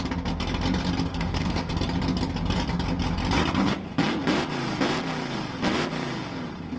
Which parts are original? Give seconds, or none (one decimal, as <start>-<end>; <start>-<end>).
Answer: 0.0-1.1; 1.7-6.8

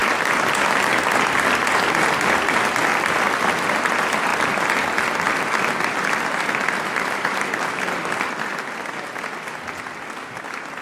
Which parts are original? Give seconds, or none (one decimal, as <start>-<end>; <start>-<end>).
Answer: 0.0-2.9; 3.5-10.8

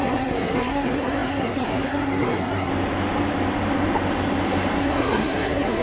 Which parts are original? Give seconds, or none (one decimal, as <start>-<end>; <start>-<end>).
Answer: 2.7-4.8